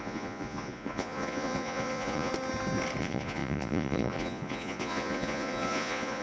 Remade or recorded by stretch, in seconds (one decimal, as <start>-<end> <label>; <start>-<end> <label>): 0.0-2.3 remade; 2.3-3.0 recorded; 3.0-6.2 remade